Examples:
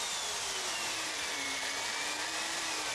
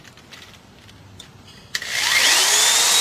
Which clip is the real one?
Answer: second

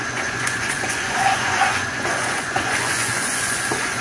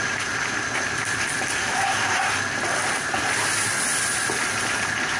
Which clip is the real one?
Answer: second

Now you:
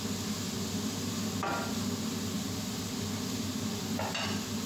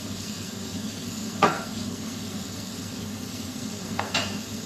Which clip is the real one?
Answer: first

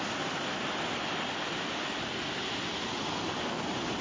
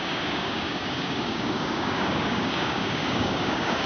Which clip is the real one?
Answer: first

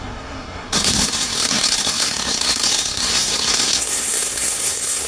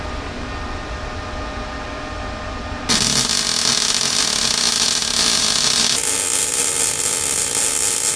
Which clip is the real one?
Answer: second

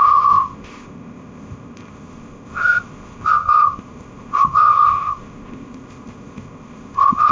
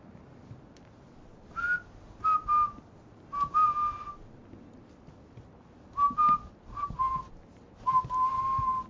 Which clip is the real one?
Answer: second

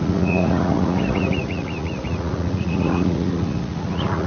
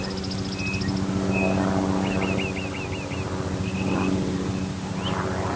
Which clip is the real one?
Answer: second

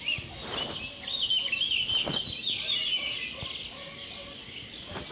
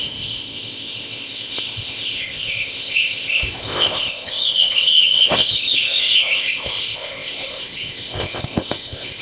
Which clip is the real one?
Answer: first